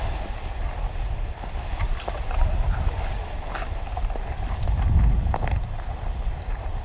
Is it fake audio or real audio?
real